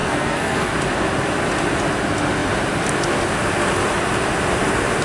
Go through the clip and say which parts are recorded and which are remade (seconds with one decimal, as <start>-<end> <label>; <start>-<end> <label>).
0.0-0.7 remade; 0.7-5.0 recorded

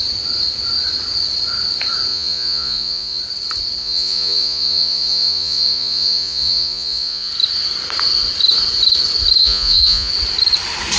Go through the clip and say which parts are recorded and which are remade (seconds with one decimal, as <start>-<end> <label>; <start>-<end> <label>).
0.0-2.1 recorded; 2.1-3.2 remade; 3.2-3.8 recorded; 3.8-7.3 remade; 7.3-9.4 recorded; 9.4-10.1 remade; 10.1-11.0 recorded

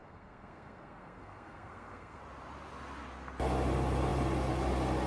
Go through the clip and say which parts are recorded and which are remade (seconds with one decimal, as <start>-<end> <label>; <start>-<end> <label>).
0.0-2.2 remade; 2.2-5.1 recorded